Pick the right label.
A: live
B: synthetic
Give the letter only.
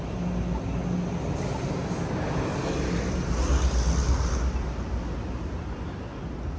A